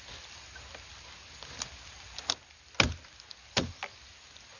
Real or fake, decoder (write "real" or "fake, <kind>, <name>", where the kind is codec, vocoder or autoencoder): real